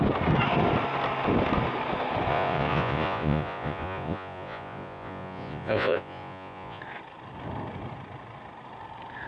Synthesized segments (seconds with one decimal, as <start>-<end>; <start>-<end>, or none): 2.3-6.8